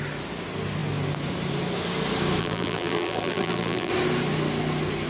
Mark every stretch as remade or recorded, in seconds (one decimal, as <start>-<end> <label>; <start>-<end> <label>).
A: 0.0-2.4 recorded; 2.4-3.9 remade; 3.9-5.1 recorded

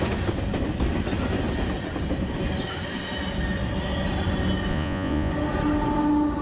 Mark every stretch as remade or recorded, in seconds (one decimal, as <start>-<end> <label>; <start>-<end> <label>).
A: 0.0-4.7 recorded; 4.7-5.3 remade; 5.3-6.4 recorded

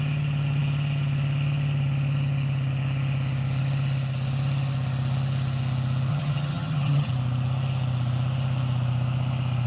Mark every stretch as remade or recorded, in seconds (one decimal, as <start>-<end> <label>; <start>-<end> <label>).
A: 0.0-6.1 recorded; 6.1-7.1 remade; 7.1-9.7 recorded

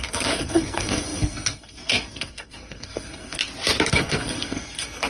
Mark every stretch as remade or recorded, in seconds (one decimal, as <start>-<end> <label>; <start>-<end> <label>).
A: 0.0-3.4 remade; 3.4-3.9 recorded; 3.9-5.1 remade

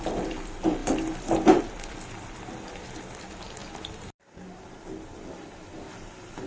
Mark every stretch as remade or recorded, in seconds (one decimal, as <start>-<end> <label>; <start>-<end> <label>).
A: 0.0-3.6 remade; 3.6-4.8 recorded; 4.8-6.5 remade

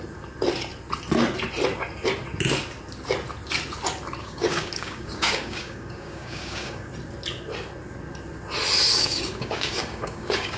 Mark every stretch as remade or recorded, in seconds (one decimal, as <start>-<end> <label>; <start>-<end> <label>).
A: 0.0-4.2 recorded; 4.2-6.9 remade; 6.9-8.9 recorded; 8.9-10.6 remade